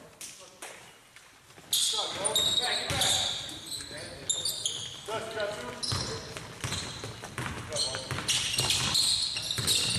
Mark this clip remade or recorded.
recorded